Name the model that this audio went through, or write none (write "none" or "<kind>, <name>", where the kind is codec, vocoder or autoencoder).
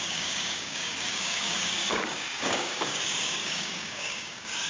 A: codec, DAC